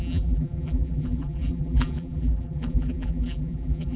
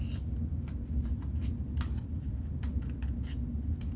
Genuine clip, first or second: second